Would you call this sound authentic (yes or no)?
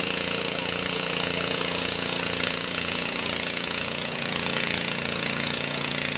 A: no